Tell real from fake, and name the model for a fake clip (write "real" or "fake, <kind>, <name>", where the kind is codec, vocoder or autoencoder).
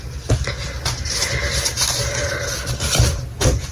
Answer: real